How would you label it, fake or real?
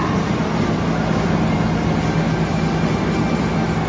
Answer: real